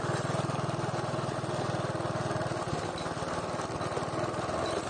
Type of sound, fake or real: real